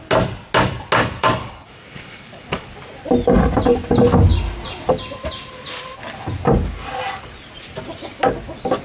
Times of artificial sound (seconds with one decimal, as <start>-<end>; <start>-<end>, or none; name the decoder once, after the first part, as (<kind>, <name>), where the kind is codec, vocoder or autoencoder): 1.0-2.7 (codec, DAC)